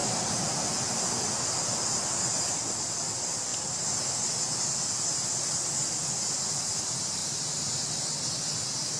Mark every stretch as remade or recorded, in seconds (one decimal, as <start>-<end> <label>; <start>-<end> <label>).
0.0-2.8 remade; 2.8-7.2 recorded; 7.2-7.9 remade; 7.9-9.0 recorded